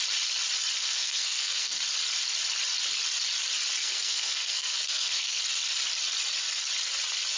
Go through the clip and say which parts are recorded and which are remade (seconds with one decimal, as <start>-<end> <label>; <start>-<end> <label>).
0.0-0.8 recorded; 0.8-1.8 remade; 1.8-3.8 recorded; 3.8-5.4 remade; 5.4-7.4 recorded